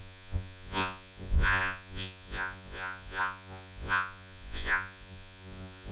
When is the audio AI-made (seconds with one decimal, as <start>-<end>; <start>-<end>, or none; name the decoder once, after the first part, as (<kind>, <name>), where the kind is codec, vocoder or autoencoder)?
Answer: 0.0-5.9 (vocoder, Vocos)